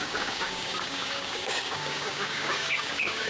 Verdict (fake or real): fake